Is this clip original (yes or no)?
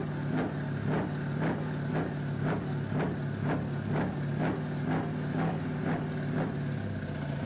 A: yes